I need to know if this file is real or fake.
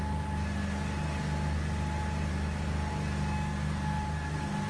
real